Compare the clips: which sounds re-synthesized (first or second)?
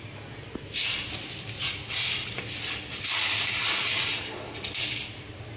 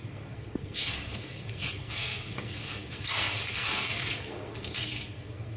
second